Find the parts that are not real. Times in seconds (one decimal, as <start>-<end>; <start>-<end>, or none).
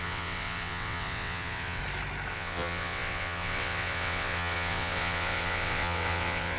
0.0-1.8; 2.3-6.6